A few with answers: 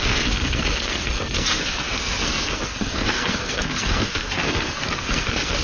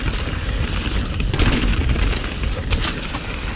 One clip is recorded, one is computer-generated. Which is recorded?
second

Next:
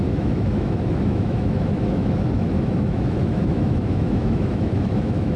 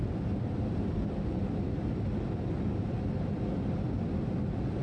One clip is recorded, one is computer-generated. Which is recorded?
second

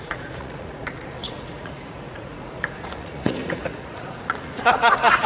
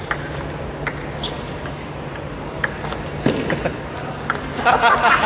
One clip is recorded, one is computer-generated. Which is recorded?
second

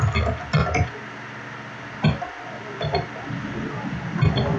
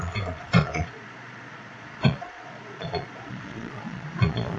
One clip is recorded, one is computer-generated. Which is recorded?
first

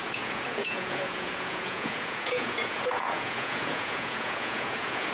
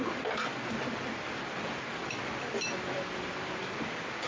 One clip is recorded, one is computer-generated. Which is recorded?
second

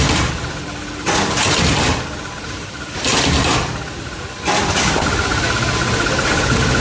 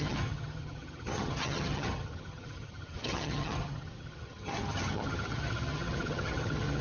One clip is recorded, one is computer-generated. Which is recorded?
first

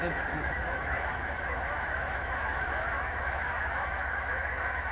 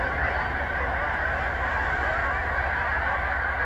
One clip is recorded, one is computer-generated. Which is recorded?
second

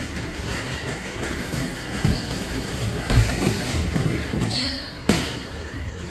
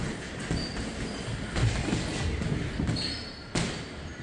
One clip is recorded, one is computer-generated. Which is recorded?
second